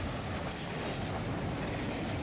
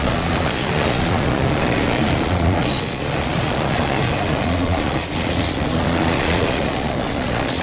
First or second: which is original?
first